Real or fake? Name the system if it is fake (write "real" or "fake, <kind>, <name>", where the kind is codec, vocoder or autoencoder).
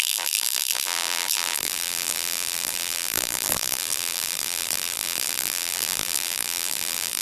fake, vocoder, BigVGAN v2